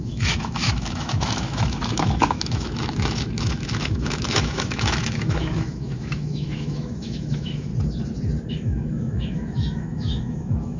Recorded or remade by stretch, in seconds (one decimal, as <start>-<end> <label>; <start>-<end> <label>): 0.0-7.7 remade; 7.7-8.5 recorded; 8.5-10.8 remade